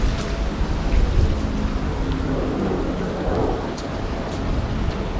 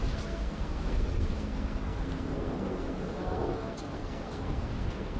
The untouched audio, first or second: first